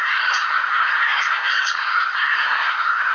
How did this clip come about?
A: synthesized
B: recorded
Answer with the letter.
A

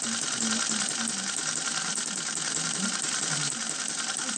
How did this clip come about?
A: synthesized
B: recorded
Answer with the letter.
B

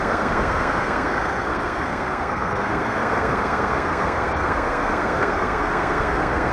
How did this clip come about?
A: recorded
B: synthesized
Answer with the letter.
B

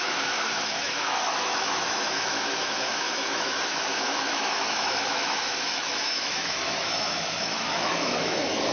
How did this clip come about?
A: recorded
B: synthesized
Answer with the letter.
B